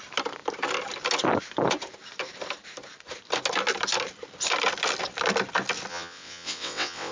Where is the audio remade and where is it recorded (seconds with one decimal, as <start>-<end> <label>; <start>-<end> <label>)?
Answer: 0.0-5.9 recorded; 5.9-7.1 remade